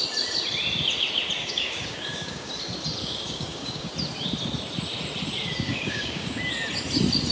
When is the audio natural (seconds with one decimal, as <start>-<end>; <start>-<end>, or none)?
0.0-1.4; 2.5-3.0; 3.9-5.7; 6.4-7.3